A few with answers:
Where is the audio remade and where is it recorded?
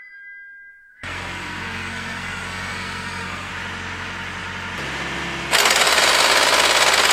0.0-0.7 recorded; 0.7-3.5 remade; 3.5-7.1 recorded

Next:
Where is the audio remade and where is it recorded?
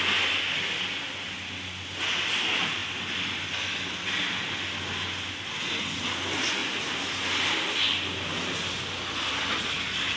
0.0-10.2 recorded